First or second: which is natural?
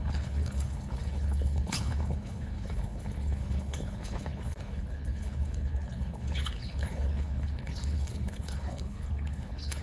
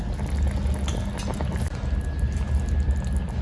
second